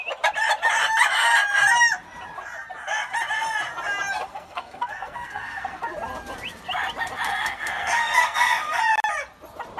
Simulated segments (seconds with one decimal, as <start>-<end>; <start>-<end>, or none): 4.3-5.8; 7.3-8.8